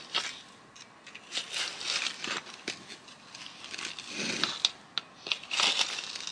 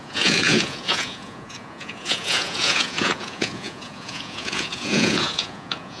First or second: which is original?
first